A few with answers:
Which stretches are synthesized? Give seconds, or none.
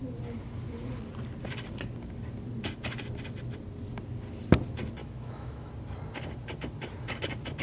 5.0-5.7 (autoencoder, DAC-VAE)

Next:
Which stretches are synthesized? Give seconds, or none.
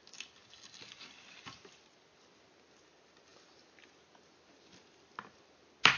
none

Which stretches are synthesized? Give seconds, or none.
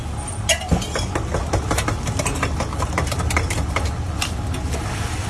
none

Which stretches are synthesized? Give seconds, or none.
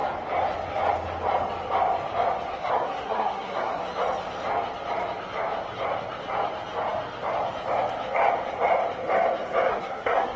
2.6-3.8 (codec, SNAC); 9.7-10.4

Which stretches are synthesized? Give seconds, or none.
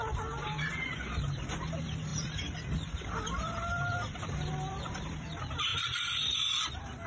none